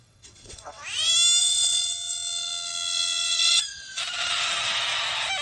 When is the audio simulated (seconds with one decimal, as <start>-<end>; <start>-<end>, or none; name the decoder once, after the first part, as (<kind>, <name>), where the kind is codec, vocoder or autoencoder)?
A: 0.0-0.8 (vocoder, WaveNeXt); 1.4-4.0